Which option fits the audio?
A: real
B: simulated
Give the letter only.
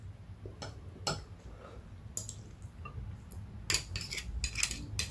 A